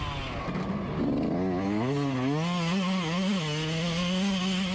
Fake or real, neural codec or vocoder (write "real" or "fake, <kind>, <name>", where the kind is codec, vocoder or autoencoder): real